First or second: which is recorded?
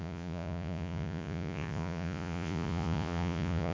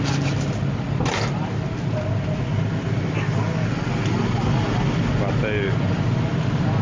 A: second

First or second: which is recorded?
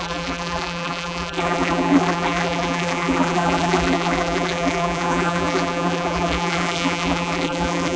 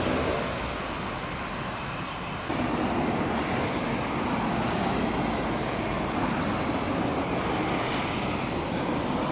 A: second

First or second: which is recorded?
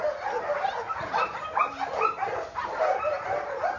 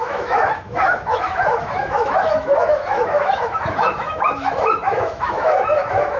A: first